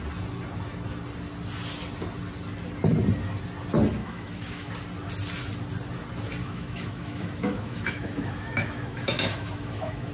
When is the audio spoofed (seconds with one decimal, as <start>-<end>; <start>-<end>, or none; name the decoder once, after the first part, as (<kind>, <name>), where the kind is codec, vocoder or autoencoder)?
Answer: 4.0-4.7 (autoencoder, DAC-VAE); 6.4-10.1